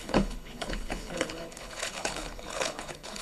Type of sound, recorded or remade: remade